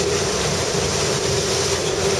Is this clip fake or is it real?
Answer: real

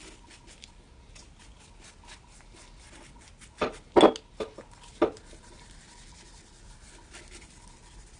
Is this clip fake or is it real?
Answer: real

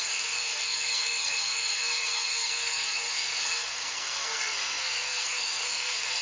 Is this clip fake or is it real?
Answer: fake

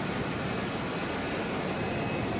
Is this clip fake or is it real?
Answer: real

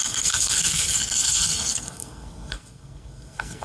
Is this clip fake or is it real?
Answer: fake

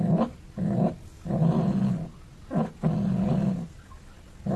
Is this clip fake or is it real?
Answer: real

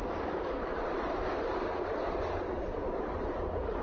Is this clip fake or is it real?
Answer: real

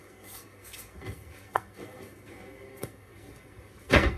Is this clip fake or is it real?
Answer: fake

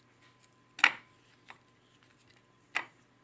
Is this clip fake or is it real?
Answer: real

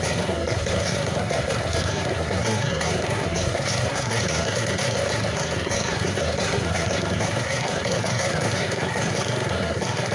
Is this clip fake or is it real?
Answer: fake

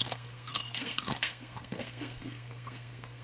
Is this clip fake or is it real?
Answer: fake